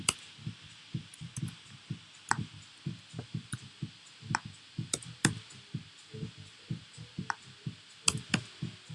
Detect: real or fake fake